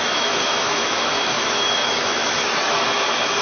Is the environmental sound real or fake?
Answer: fake